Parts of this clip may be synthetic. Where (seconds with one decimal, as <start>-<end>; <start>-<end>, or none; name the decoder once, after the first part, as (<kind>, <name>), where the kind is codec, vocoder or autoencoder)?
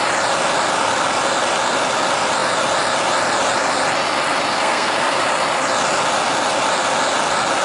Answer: 4.5-5.2 (codec, SNAC)